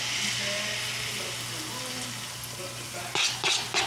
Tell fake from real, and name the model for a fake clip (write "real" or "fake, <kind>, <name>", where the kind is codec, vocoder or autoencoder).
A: real